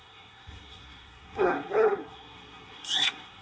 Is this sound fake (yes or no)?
yes